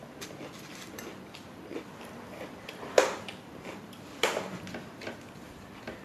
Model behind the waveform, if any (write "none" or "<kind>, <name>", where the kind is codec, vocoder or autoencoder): none